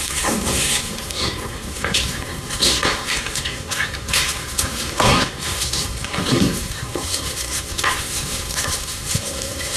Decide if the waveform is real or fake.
fake